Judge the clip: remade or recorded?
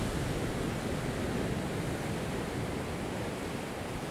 recorded